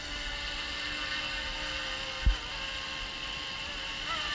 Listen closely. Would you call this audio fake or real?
real